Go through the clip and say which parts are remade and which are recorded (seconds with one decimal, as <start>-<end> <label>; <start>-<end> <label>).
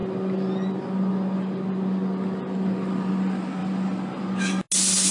0.0-5.1 recorded